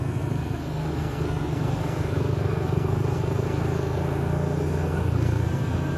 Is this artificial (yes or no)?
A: yes